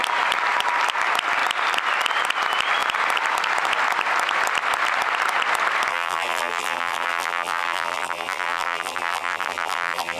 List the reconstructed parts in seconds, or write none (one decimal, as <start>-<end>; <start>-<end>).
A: 5.9-10.2